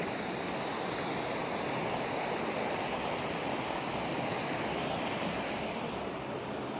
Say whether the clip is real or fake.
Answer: real